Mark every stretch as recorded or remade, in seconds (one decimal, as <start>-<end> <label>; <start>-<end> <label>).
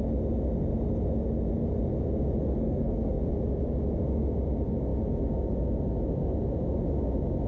0.0-2.6 recorded; 2.6-3.2 remade; 3.2-7.5 recorded